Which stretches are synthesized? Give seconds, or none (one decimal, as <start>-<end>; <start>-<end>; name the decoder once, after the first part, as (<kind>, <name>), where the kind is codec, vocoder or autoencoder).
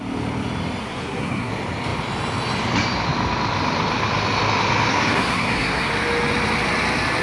0.8-1.5 (codec, SNAC); 4.9-5.9